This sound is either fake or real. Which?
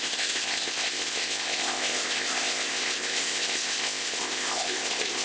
fake